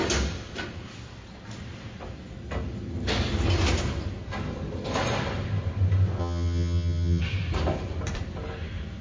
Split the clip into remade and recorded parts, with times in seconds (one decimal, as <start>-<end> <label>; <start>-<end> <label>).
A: 0.0-6.2 recorded; 6.2-7.2 remade; 7.2-9.0 recorded